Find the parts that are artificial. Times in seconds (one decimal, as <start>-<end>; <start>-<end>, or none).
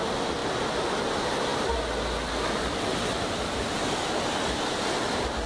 none